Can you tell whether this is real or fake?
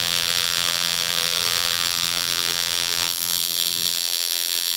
fake